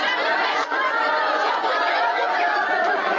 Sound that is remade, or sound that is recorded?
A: remade